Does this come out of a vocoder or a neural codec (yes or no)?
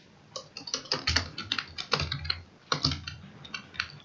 no